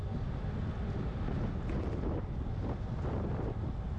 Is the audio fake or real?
real